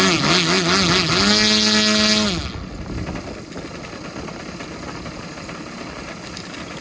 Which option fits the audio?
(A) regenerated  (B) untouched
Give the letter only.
B